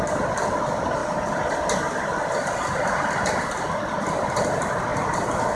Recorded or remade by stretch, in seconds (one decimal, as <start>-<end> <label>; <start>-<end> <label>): 0.0-5.6 recorded

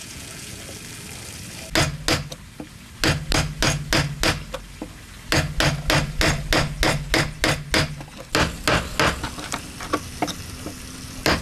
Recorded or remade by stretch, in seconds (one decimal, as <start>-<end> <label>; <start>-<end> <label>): 0.0-0.6 remade; 0.6-11.4 recorded

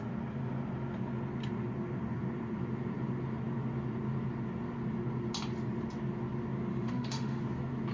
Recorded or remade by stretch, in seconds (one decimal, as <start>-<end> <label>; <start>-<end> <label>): 0.0-6.7 recorded; 6.7-7.4 remade; 7.4-7.9 recorded

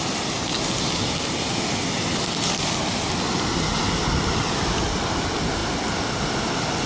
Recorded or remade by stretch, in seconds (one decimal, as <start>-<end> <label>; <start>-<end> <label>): 0.0-0.5 remade; 0.5-4.5 recorded; 4.5-6.9 remade

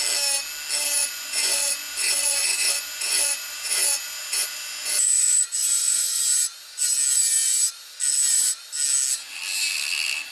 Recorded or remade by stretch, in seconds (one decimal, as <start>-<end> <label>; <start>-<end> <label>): 0.0-1.0 recorded; 1.0-6.2 remade; 6.2-10.3 recorded

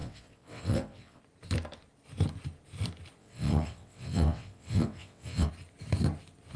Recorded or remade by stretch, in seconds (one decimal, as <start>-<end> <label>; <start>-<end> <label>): 0.0-1.2 remade; 1.2-3.2 recorded; 3.2-5.5 remade; 5.5-6.6 recorded

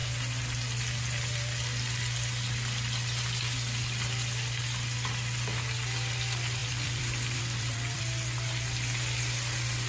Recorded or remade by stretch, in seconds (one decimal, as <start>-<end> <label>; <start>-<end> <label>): 0.0-6.6 recorded; 6.6-8.0 remade; 8.0-9.9 recorded